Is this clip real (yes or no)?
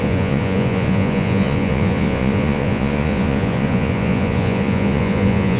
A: no